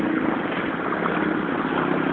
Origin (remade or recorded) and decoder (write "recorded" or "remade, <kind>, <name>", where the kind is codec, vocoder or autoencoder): recorded